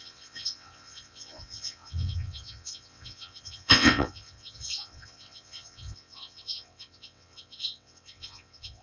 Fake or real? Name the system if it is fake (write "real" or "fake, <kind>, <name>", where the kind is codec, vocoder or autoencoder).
fake, vocoder, WaveNeXt